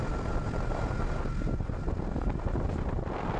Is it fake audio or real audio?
real